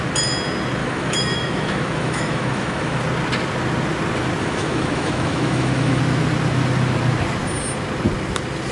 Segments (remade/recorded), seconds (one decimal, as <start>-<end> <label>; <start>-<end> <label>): 0.0-0.8 recorded; 0.8-3.0 remade; 3.0-4.4 recorded; 4.4-6.0 remade; 6.0-8.7 recorded